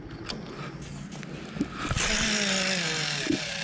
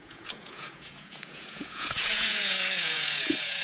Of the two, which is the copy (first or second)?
second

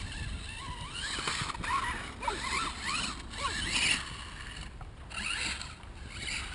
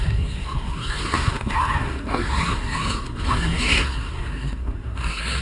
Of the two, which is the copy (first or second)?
second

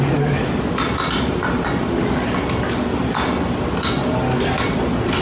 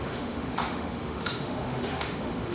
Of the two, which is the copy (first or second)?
second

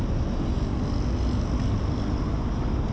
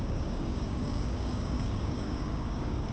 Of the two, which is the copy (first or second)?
second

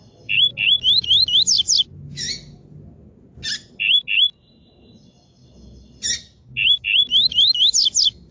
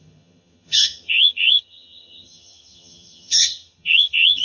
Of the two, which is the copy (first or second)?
second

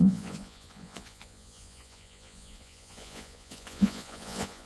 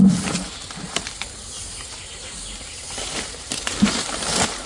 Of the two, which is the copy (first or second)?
first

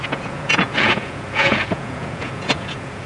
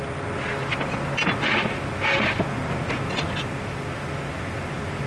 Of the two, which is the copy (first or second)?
first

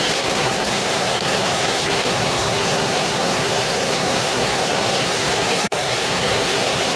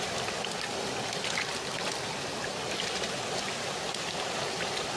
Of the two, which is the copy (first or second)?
first